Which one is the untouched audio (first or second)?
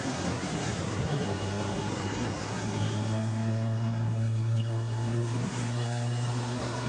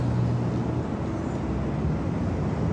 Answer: second